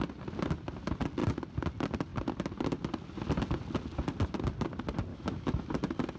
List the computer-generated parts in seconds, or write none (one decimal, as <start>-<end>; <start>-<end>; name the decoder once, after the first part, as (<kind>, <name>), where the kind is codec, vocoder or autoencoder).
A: 5.1-5.7 (autoencoder, DAC-VAE)